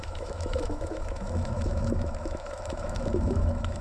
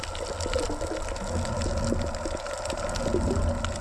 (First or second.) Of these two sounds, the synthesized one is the first